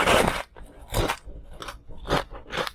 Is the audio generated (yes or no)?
no